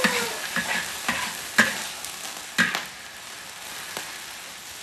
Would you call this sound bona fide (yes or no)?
yes